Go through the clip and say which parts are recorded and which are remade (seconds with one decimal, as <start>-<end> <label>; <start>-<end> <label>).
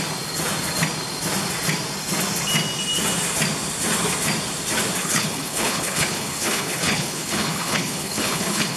0.0-5.0 recorded; 5.0-8.8 remade